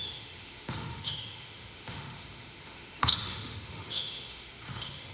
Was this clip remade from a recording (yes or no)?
yes